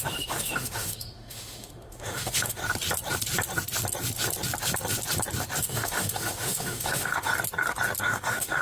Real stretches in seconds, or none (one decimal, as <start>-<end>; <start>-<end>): 2.6-5.6; 7.3-8.0